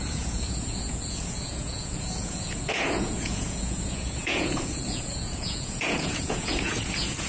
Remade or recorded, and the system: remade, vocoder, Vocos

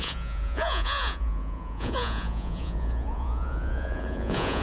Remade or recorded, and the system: remade, vocoder, Vocos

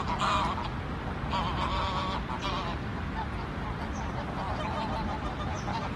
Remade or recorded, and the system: recorded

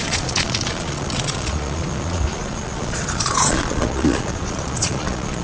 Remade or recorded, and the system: remade, vocoder, Vocos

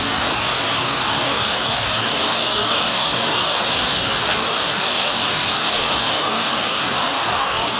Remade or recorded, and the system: remade, codec, DAC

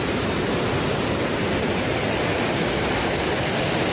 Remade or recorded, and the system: recorded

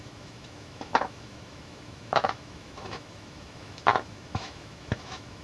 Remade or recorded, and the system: remade, autoencoder, DAC-VAE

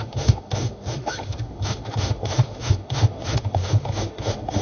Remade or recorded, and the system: remade, autoencoder, DAC-VAE